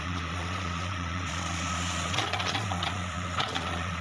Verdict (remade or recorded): remade